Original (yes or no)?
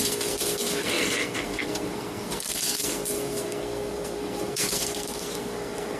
no